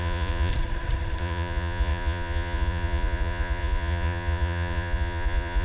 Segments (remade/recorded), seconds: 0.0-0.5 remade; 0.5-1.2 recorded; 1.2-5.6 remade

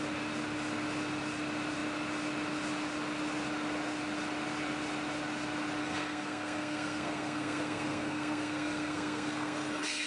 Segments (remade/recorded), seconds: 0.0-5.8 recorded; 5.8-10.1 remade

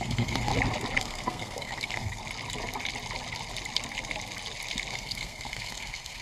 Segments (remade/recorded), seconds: 0.0-0.5 remade; 0.5-1.0 recorded; 1.0-2.2 remade; 2.2-4.9 recorded; 4.9-6.2 remade